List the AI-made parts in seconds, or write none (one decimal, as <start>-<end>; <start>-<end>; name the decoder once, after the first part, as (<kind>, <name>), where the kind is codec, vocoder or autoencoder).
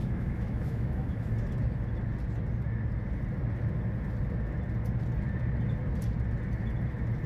0.0-1.3 (autoencoder, DAC-VAE)